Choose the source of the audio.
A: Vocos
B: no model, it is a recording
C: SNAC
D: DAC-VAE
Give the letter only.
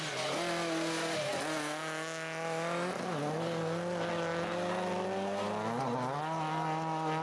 B